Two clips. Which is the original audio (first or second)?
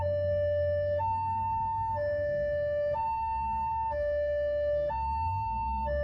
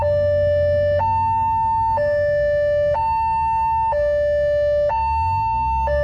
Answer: second